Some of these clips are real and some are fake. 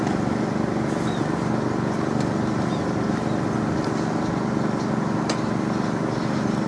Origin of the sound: real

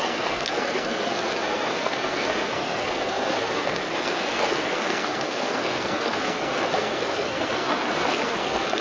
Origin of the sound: fake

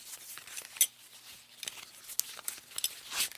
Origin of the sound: real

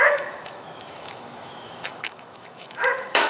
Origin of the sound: fake